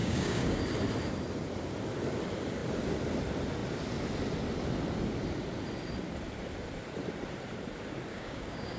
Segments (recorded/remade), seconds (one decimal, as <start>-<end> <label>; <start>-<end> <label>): 0.0-0.6 remade; 0.6-8.1 recorded; 8.1-8.8 remade